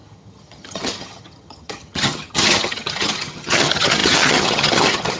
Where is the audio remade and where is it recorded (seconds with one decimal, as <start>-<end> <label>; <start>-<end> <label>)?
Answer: 0.0-5.2 remade